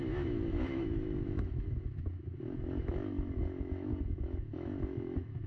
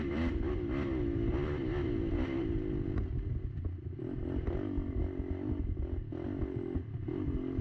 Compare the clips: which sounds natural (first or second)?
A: second